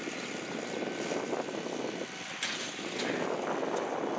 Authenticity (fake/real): real